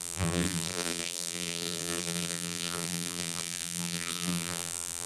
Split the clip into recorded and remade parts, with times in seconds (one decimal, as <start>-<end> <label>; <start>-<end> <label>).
0.0-5.1 remade